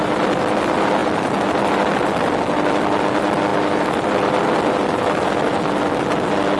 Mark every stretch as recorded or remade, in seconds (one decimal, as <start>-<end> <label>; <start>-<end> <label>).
0.0-0.5 remade; 0.5-1.0 recorded; 1.0-1.7 remade; 1.7-3.5 recorded; 3.5-4.5 remade; 4.5-6.6 recorded